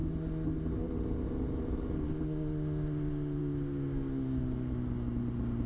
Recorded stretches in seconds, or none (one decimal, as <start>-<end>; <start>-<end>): 0.0-3.4; 4.4-5.7